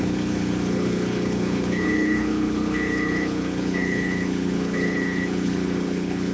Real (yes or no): no